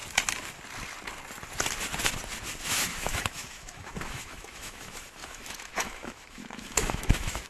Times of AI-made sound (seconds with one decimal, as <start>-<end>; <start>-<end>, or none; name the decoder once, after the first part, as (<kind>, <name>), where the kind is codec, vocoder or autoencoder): 2.6-7.5 (autoencoder, DAC-VAE)